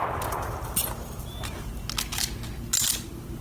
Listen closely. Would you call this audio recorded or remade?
recorded